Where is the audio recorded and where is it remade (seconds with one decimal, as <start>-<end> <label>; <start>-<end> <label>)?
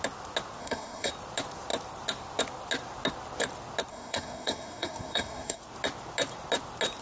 0.0-0.6 recorded; 0.6-1.1 remade; 1.1-3.9 recorded; 3.9-5.6 remade; 5.6-7.0 recorded